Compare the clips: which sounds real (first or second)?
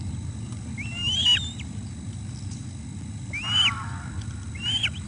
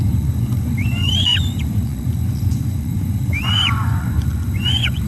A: first